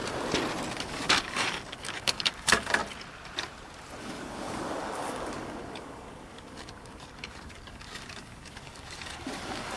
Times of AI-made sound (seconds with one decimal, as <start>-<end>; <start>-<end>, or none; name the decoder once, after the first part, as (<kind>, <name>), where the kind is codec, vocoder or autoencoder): 0.7-2.8 (codec, DAC); 4.0-9.8